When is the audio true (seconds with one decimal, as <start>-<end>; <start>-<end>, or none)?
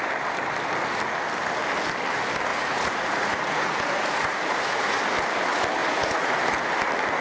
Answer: 0.0-2.5; 5.0-5.8; 6.4-7.2